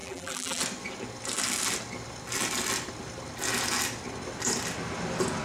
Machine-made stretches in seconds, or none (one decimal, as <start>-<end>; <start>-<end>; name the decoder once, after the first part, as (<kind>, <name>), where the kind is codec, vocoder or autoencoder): 0.0-0.6 (vocoder, BigVGAN v2)